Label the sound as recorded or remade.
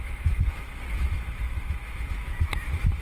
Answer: remade